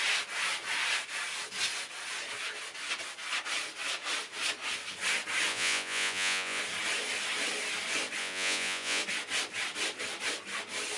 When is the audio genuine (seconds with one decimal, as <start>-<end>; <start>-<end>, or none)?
0.0-5.5; 6.6-8.2; 9.0-11.0